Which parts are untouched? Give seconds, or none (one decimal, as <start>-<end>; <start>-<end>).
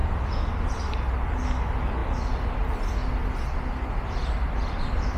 0.0-5.2